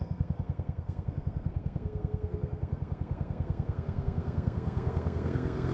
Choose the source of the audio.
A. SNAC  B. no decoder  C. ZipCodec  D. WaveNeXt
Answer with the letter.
A